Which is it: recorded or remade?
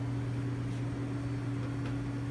recorded